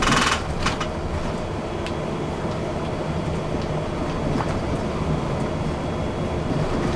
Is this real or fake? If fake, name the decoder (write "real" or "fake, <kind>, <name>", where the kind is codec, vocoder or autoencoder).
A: real